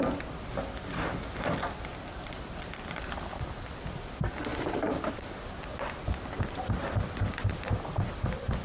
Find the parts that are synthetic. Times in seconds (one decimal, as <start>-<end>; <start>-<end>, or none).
4.5-5.4